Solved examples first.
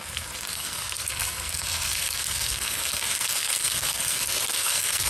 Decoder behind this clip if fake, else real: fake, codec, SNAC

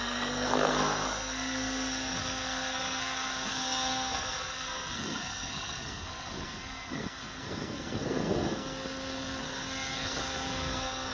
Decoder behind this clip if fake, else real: fake, codec, SNAC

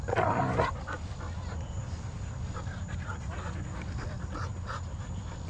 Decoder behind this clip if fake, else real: real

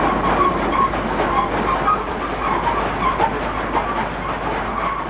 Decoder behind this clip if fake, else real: real